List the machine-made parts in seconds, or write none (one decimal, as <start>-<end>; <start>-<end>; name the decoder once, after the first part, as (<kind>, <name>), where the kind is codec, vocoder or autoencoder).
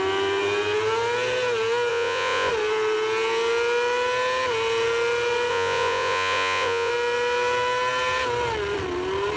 1.9-2.5 (vocoder, Vocos); 5.5-6.9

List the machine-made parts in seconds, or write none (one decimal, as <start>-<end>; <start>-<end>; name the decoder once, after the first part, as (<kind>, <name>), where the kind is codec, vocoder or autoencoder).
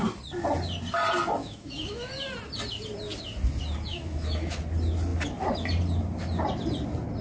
1.4-2.1 (autoencoder, DAC-VAE); 3.9-4.6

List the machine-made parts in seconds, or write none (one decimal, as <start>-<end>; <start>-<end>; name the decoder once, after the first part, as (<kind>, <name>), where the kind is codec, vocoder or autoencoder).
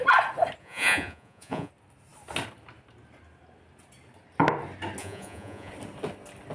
0.6-1.7 (vocoder, Vocos); 5.0-5.7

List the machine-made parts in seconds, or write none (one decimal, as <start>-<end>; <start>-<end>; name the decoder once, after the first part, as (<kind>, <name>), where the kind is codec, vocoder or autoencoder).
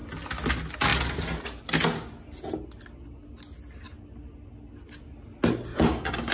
5.7-6.3 (codec, DAC)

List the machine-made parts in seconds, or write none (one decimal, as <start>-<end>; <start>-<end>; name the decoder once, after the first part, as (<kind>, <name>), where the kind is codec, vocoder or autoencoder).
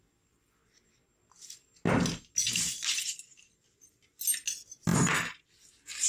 2.4-4.1 (vocoder, BigVGAN v2); 4.9-6.1